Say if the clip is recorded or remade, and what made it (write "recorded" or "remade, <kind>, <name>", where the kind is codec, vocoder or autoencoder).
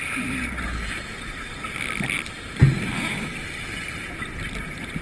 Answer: recorded